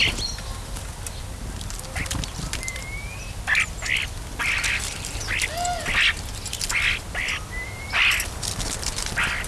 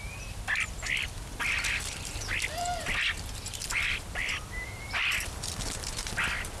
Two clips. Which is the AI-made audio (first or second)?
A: second